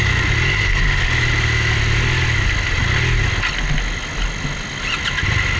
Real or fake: real